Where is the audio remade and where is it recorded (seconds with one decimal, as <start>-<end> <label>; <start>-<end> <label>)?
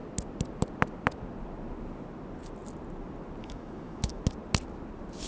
0.0-3.4 recorded; 3.4-4.2 remade; 4.2-5.3 recorded